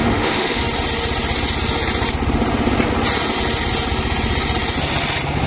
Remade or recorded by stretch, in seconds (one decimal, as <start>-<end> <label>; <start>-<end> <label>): 0.0-0.6 remade; 0.6-5.5 recorded